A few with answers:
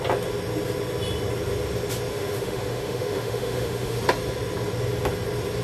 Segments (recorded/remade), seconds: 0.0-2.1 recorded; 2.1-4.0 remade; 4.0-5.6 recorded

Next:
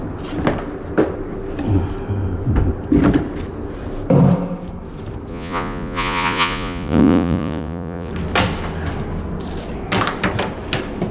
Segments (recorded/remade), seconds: 0.0-5.3 recorded; 5.3-8.1 remade; 8.1-11.1 recorded

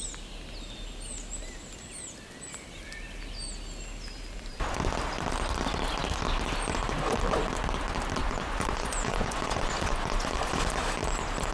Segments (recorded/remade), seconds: 0.0-8.2 recorded; 8.2-10.5 remade; 10.5-11.5 recorded

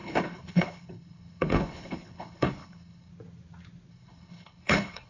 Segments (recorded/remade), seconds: 0.0-3.1 remade; 3.1-3.9 recorded; 3.9-5.1 remade

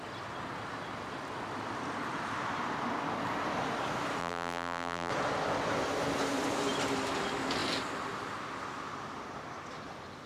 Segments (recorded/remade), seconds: 0.0-4.2 recorded; 4.2-5.1 remade; 5.1-10.3 recorded

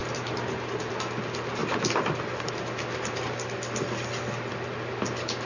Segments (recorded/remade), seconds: 0.0-0.9 remade; 0.9-5.5 recorded

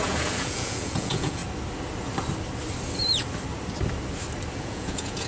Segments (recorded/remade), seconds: 0.0-1.4 remade; 1.4-4.6 recorded; 4.6-5.3 remade

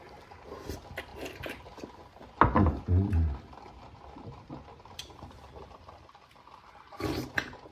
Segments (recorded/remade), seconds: 0.0-7.7 recorded